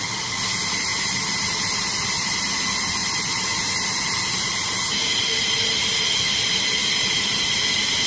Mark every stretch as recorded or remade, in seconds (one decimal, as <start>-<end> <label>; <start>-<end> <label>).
0.0-8.1 recorded